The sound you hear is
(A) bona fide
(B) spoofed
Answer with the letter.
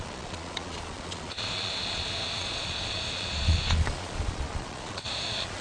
B